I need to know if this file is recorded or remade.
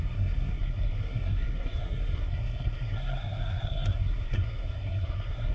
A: remade